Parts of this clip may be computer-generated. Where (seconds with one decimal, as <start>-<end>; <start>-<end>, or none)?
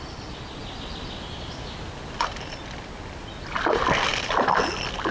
none